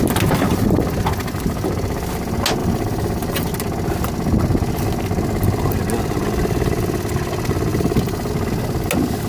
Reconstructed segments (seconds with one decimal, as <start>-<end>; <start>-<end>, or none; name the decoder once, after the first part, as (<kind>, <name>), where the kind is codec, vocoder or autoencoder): 2.6-3.5 (vocoder, BigVGAN v2); 7.7-8.3